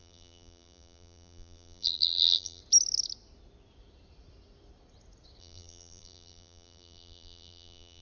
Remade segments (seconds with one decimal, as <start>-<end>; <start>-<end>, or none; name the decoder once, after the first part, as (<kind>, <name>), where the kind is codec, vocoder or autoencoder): 0.0-2.6 (vocoder, BigVGAN v2); 5.4-8.0